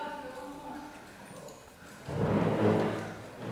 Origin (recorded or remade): recorded